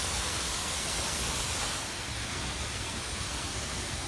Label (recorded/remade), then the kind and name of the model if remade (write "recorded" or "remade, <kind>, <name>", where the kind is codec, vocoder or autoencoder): remade, codec, SNAC